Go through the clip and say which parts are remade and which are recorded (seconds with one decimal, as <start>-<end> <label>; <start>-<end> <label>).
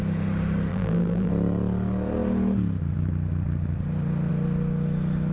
0.0-0.7 recorded; 0.7-1.3 remade; 1.3-5.3 recorded